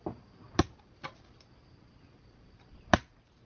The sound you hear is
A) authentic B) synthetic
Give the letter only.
A